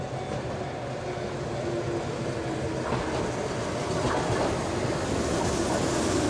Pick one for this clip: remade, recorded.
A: recorded